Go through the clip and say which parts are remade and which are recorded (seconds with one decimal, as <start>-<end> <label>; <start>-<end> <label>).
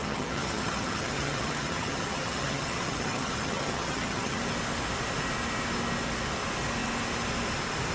0.0-4.4 remade; 4.4-7.9 recorded